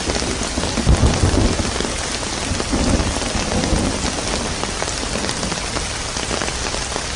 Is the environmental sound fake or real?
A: real